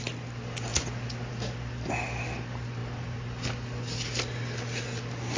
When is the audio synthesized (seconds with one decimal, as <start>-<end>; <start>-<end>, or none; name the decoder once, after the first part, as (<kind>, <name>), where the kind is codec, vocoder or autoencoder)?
none